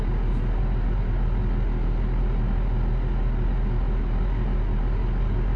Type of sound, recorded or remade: recorded